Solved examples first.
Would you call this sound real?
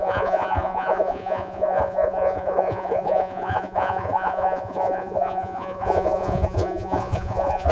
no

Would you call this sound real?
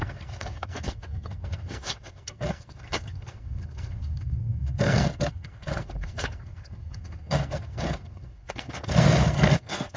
no